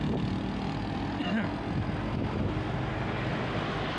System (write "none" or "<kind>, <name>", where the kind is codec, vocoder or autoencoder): none